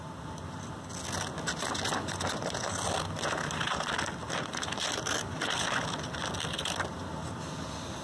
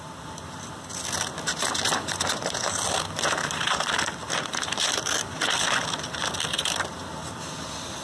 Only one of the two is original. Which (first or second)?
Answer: first